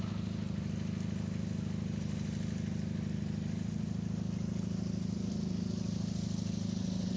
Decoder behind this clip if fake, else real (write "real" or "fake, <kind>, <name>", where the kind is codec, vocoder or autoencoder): real